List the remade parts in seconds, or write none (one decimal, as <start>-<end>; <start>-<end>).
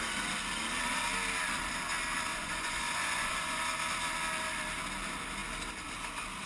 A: 2.3-3.6